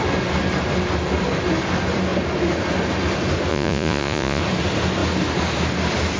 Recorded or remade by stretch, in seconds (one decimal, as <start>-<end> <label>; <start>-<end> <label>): 0.0-3.5 recorded; 3.5-4.4 remade; 4.4-6.2 recorded